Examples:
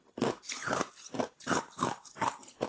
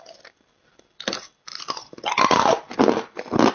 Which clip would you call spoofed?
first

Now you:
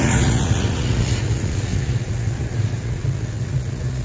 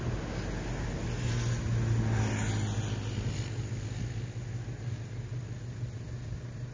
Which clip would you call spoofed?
first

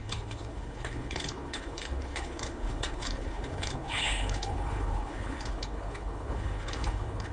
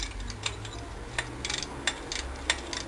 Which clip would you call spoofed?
first